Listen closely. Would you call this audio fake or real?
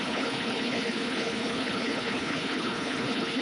fake